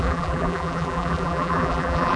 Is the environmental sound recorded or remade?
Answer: remade